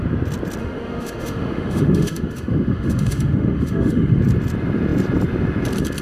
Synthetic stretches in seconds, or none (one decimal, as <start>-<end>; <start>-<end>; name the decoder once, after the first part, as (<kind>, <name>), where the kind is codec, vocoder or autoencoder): 0.6-4.2 (autoencoder, DAC-VAE)